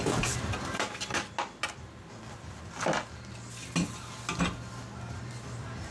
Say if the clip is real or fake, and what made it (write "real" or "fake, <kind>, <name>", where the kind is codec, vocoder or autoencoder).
real